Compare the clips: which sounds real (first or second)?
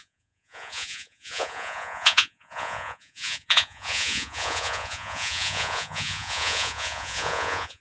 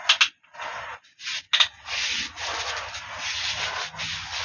second